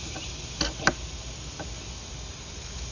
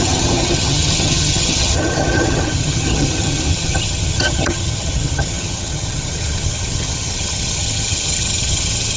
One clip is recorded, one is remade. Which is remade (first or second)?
second